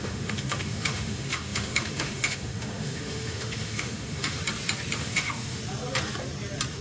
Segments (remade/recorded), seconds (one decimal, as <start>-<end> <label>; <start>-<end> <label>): 0.0-4.4 remade; 4.4-5.0 recorded; 5.0-5.6 remade; 5.6-6.8 recorded